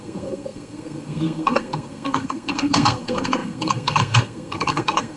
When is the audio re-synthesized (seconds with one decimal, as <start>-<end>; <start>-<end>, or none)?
0.0-5.2